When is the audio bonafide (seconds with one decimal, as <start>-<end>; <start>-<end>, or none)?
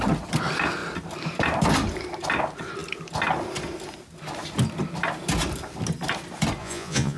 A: 0.0-6.6